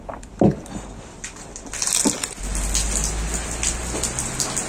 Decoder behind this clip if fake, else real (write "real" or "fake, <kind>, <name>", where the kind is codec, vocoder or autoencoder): real